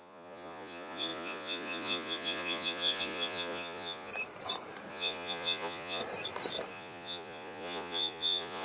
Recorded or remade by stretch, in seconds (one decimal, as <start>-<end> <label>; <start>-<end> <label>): 0.0-4.1 remade; 4.1-4.9 recorded; 4.9-6.0 remade; 6.0-6.7 recorded; 6.7-8.6 remade